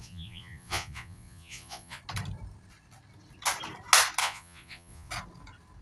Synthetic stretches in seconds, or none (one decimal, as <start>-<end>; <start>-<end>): 0.0-2.0; 4.2-5.1